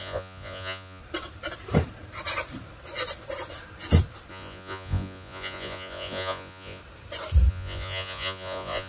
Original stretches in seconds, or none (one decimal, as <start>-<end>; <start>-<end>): 1.0-4.3; 6.8-7.5